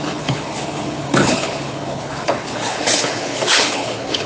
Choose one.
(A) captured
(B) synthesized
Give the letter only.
B